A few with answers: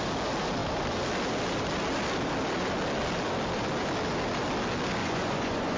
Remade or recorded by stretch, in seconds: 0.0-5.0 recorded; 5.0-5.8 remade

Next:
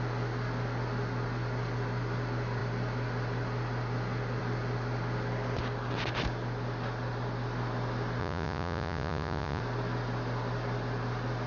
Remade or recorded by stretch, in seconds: 0.0-8.2 recorded; 8.2-9.6 remade; 9.6-11.5 recorded

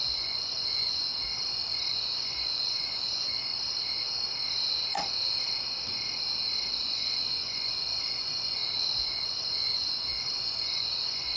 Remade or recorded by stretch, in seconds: 0.0-1.1 remade; 1.1-1.9 recorded; 1.9-3.5 remade; 3.5-6.8 recorded; 6.8-8.6 remade; 8.6-9.1 recorded; 9.1-11.4 remade

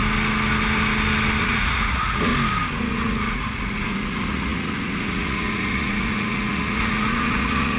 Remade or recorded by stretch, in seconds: 0.0-1.4 recorded; 1.4-2.3 remade; 2.3-2.8 recorded; 2.8-7.8 remade